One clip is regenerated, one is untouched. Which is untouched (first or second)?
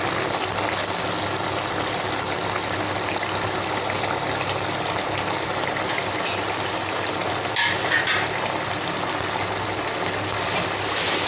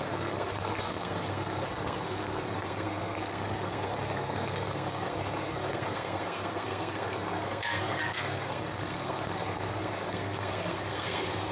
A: first